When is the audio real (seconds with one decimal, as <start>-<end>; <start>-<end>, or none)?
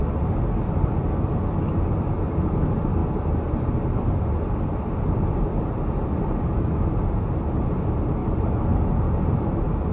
0.0-9.9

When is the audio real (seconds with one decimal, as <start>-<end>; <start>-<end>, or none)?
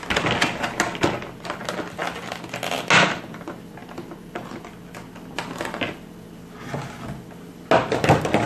0.0-3.8; 4.6-8.5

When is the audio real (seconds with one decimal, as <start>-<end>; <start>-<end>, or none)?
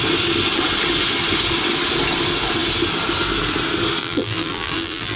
0.0-4.0